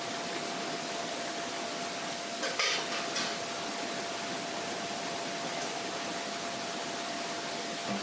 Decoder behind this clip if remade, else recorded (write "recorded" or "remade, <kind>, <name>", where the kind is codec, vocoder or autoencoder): recorded